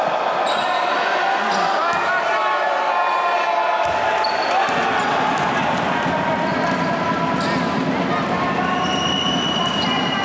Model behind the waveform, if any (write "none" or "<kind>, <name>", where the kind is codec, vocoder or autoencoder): none